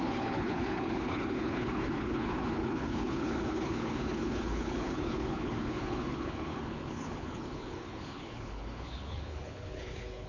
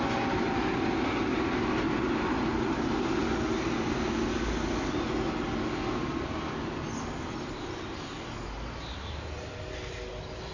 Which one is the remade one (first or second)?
first